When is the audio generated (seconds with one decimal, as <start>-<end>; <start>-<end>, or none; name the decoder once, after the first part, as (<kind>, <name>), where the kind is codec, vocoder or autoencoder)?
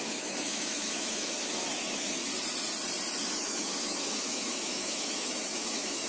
0.0-2.3 (autoencoder, DAC-VAE); 3.2-6.1